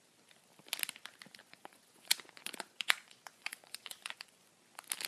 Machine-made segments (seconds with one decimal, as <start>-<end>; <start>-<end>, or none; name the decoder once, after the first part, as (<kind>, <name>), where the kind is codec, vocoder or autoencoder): 1.4-4.5 (vocoder, Vocos)